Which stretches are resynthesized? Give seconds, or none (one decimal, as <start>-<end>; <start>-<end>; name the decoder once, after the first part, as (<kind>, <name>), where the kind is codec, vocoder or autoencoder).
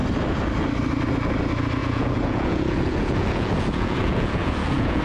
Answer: 1.8-5.0 (vocoder, Vocos)